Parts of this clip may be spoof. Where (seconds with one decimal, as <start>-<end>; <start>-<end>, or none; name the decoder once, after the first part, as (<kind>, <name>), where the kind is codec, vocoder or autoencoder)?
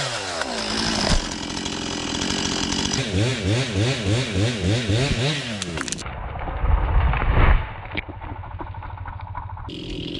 none